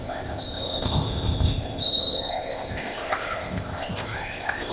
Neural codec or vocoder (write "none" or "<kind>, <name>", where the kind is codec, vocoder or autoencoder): codec, ZipCodec